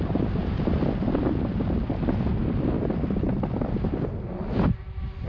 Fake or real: real